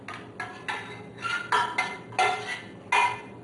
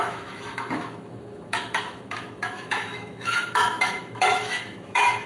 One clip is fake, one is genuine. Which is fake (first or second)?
second